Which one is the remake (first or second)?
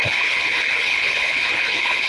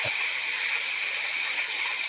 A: first